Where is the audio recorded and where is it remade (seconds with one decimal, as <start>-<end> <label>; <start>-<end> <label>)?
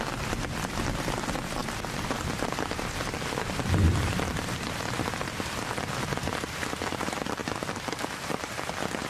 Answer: 0.0-9.1 recorded